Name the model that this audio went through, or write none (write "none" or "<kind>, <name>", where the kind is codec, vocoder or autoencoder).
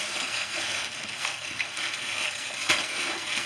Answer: codec, SNAC